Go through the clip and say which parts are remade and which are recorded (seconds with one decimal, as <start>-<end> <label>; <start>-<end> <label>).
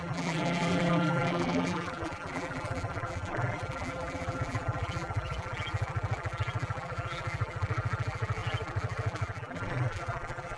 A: 0.0-10.6 remade